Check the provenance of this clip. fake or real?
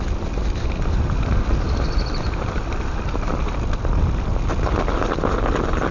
real